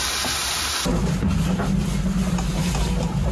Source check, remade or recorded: recorded